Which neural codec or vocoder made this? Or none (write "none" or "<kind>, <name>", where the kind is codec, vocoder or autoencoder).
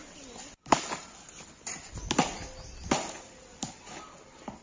none